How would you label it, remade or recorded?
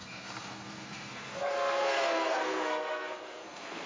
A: remade